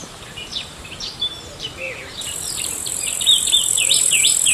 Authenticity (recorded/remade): remade